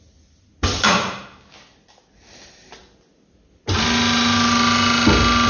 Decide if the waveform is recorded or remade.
recorded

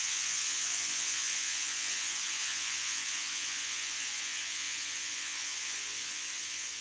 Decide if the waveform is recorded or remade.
remade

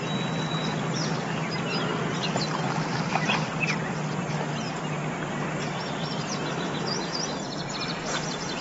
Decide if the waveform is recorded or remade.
recorded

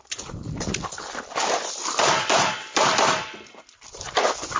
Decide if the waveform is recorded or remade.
remade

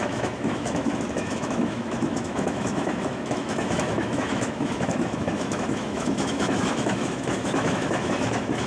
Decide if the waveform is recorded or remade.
remade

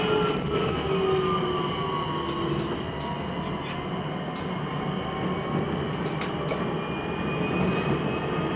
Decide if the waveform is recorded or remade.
recorded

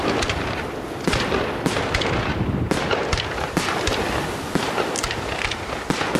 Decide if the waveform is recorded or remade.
recorded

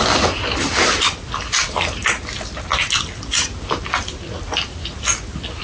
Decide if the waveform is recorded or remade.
recorded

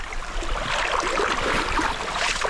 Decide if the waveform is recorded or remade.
remade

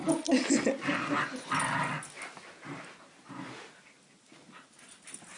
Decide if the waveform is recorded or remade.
recorded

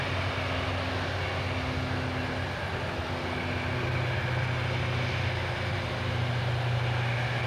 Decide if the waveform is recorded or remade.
recorded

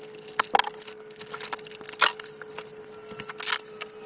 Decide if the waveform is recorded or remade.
recorded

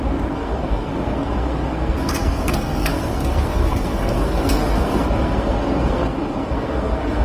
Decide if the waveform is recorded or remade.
remade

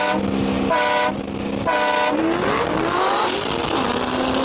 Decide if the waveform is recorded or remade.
recorded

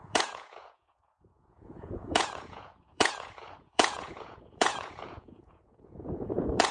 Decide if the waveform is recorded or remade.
remade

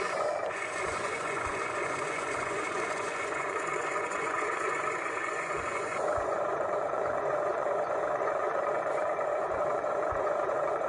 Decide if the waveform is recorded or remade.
remade